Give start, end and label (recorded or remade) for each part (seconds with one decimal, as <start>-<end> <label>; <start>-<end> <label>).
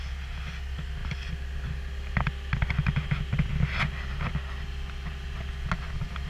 0.0-6.3 recorded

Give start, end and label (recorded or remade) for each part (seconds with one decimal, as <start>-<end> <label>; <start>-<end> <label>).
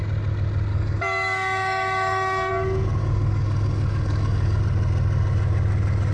0.0-0.7 recorded; 0.7-2.5 remade; 2.5-3.0 recorded; 3.0-4.6 remade; 4.6-6.1 recorded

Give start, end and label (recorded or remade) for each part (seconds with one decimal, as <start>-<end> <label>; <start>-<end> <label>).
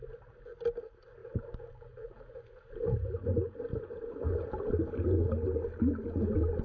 0.0-6.6 recorded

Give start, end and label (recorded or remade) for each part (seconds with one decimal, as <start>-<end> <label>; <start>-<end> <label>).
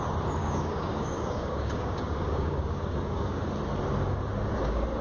0.0-0.4 recorded; 0.4-3.4 remade; 3.4-5.0 recorded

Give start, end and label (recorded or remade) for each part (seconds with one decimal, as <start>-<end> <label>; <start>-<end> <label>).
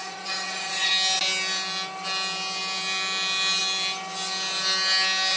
0.0-0.9 remade; 0.9-5.4 recorded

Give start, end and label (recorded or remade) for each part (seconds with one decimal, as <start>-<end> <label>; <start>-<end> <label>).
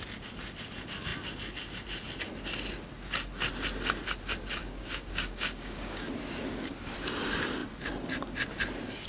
0.0-4.6 recorded; 4.6-6.1 remade; 6.1-9.1 recorded